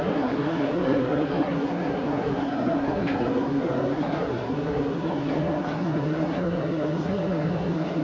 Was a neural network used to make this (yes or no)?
yes